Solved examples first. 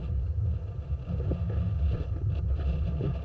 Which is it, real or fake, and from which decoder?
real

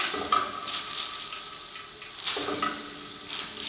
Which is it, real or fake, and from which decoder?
real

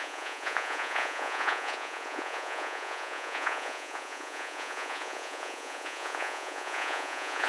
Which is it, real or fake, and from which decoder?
fake, vocoder, Vocos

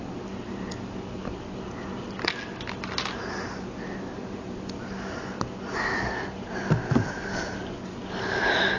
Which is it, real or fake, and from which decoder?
real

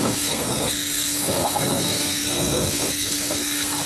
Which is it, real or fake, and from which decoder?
fake, codec, SNAC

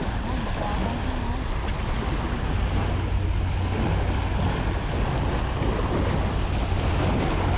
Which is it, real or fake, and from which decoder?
real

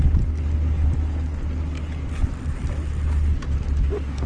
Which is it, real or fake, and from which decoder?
real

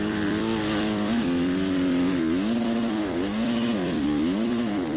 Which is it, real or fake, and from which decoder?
fake, vocoder, BigVGAN v2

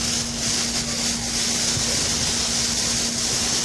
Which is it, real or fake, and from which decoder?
real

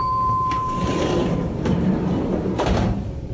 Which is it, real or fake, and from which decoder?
fake, vocoder, BigVGAN v2